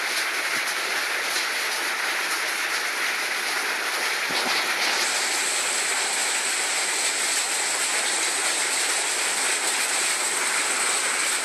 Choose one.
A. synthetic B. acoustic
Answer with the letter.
B